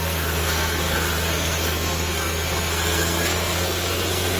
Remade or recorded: remade